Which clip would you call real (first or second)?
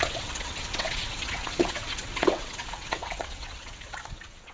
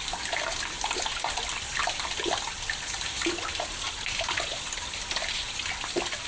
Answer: second